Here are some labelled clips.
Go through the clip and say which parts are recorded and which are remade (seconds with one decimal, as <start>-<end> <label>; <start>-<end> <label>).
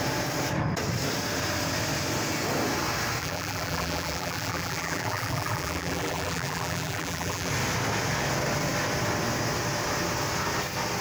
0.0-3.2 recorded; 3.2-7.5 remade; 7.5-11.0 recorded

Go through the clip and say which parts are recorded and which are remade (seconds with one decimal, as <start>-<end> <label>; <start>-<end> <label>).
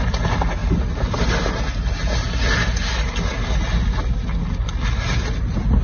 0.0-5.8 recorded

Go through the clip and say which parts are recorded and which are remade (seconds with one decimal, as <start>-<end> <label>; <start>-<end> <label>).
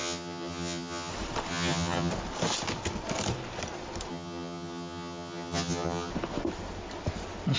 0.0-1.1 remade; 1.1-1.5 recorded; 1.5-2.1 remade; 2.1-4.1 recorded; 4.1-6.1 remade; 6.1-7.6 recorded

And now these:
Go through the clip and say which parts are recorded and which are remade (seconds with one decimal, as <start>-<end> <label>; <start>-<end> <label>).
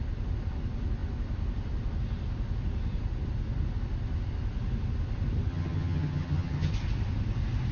0.0-5.5 recorded; 5.5-6.7 remade; 6.7-7.7 recorded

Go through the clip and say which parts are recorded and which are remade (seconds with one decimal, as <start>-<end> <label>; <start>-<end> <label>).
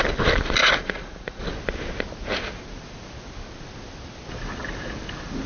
0.0-0.6 recorded; 0.6-1.4 remade; 1.4-5.5 recorded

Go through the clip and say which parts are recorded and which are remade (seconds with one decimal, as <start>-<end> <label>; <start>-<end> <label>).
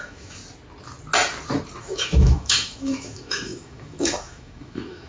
0.0-0.4 remade; 0.4-1.8 recorded; 1.8-5.1 remade